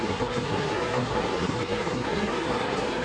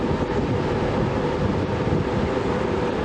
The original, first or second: second